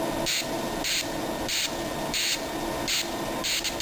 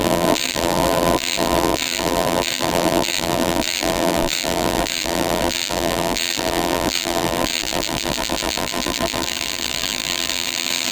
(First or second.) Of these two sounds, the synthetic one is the second